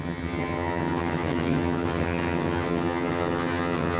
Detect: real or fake fake